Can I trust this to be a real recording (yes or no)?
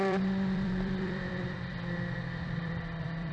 no